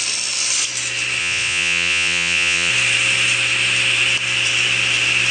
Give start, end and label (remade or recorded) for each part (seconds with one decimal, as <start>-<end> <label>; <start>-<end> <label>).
0.0-1.2 recorded; 1.2-2.7 remade; 2.7-5.3 recorded